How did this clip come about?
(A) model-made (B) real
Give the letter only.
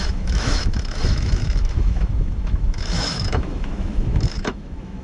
A